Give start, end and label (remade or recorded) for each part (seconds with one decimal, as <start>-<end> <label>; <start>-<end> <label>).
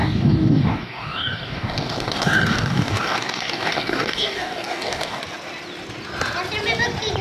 0.0-5.2 remade; 5.2-7.2 recorded